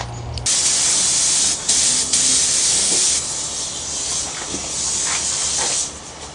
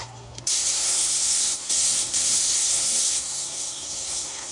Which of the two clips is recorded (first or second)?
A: first